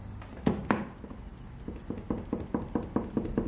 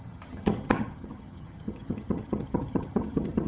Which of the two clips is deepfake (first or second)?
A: second